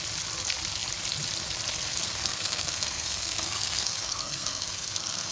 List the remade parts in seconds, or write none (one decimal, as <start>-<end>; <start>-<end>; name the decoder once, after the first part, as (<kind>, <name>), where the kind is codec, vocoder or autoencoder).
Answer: 1.9-5.3 (codec, SNAC)